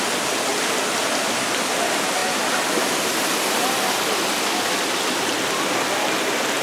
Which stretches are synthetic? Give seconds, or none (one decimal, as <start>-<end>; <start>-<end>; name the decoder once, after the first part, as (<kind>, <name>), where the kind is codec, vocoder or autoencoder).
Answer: none